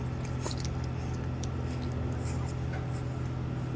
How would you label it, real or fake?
real